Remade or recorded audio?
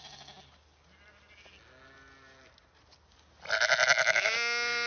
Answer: recorded